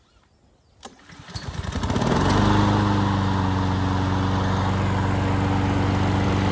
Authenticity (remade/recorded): recorded